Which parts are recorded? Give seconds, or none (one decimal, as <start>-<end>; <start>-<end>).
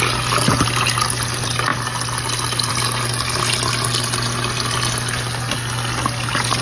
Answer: 0.0-6.6